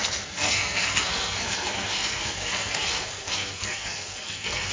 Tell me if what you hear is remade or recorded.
remade